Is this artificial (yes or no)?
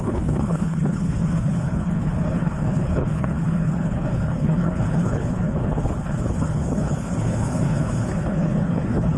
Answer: yes